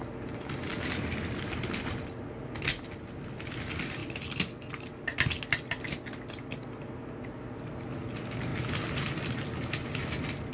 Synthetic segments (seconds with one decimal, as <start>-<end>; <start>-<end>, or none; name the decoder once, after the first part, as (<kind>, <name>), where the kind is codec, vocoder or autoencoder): none